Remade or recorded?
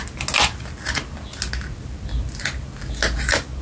recorded